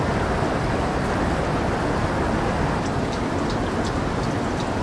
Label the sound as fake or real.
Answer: real